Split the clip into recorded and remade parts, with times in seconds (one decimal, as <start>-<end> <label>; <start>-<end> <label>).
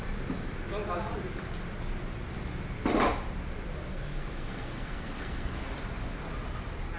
0.0-3.9 recorded; 3.9-5.6 remade; 5.6-7.0 recorded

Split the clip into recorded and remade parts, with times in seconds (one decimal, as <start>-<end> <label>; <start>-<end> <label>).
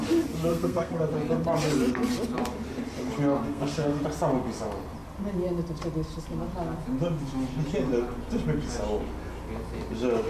0.0-0.5 recorded; 0.5-1.0 remade; 1.0-3.4 recorded; 3.4-4.0 remade; 4.0-10.3 recorded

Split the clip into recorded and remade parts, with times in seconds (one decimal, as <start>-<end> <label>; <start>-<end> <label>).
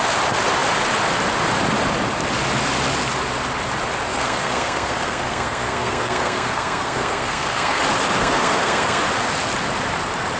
0.0-4.1 recorded; 4.1-7.8 remade; 7.8-8.2 recorded; 8.2-9.0 remade; 9.0-10.4 recorded